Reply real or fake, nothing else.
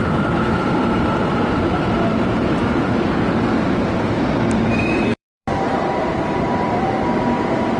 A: fake